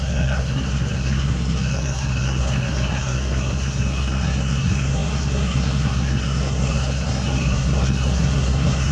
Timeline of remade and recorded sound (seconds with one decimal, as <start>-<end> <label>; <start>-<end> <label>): 0.0-8.9 remade